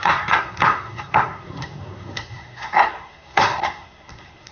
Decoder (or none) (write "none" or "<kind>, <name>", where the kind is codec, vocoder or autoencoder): codec, SNAC